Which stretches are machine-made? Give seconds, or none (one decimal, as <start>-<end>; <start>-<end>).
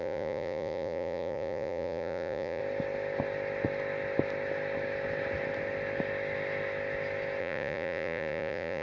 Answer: 0.0-2.6; 7.4-8.8